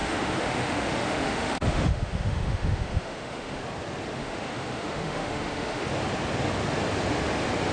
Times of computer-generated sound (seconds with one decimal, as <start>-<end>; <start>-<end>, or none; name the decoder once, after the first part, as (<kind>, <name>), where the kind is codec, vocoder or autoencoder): 0.0-3.6 (autoencoder, DAC-VAE); 4.2-5.9